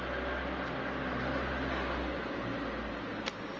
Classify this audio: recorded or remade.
recorded